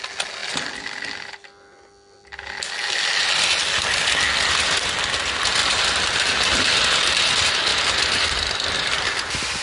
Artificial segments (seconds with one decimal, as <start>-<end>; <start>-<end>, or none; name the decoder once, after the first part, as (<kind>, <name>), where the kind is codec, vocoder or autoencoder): 5.6-6.8 (vocoder, BigVGAN v2); 7.7-9.6